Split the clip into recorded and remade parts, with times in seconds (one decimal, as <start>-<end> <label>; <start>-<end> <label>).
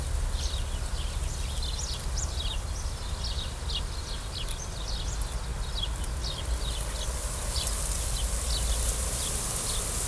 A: 0.0-10.1 recorded